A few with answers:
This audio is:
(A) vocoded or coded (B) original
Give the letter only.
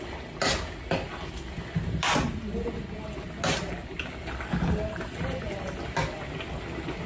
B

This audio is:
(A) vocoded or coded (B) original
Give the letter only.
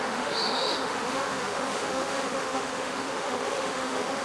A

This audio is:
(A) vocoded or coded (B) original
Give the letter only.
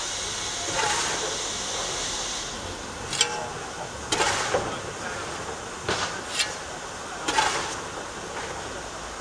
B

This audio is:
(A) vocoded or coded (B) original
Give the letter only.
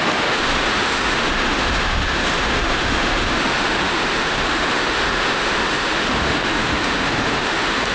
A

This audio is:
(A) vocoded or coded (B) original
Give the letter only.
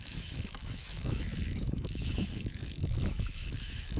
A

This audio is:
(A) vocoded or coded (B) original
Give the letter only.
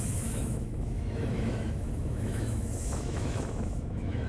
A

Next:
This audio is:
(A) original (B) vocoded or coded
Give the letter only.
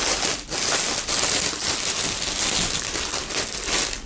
A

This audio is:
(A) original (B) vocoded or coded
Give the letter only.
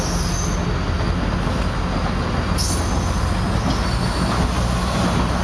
A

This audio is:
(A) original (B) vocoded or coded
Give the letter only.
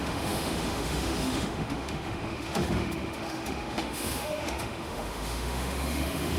B